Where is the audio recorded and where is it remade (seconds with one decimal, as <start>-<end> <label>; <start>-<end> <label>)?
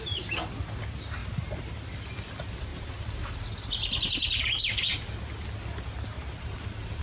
0.0-1.2 recorded; 1.2-1.9 remade; 1.9-2.7 recorded; 2.7-3.3 remade; 3.3-7.0 recorded